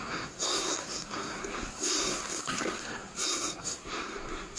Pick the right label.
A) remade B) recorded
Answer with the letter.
A